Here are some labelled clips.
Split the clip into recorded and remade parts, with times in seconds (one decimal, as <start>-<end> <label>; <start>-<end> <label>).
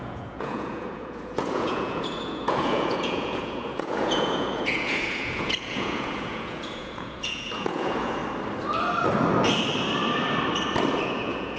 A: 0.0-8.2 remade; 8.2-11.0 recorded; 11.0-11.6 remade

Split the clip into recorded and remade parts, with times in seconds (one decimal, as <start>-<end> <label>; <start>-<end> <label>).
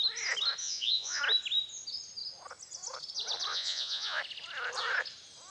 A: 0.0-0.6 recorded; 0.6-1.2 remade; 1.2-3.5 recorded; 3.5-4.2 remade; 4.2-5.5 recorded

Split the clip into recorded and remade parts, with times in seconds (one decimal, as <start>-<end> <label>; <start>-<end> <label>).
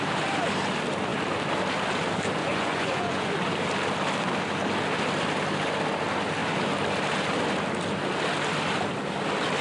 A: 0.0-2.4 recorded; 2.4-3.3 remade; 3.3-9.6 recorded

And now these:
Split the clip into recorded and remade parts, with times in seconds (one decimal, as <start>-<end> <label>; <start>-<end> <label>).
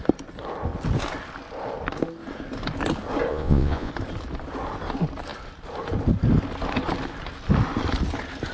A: 0.0-3.3 recorded; 3.3-3.9 remade; 3.9-8.5 recorded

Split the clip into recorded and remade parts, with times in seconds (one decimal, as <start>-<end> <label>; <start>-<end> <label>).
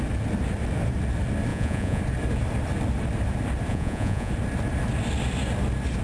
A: 0.0-1.5 recorded; 1.5-2.0 remade; 2.0-3.7 recorded; 3.7-4.3 remade; 4.3-6.0 recorded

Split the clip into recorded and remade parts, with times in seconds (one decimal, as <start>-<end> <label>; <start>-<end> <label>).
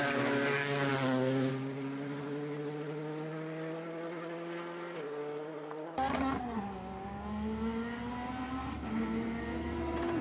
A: 0.0-10.2 recorded